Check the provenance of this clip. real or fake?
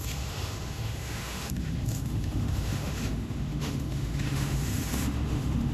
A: fake